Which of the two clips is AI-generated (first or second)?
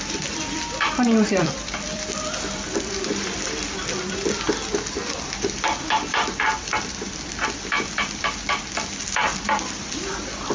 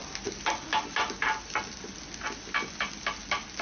first